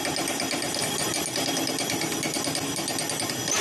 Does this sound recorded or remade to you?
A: recorded